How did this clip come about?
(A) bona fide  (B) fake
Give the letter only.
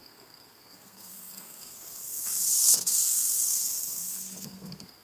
B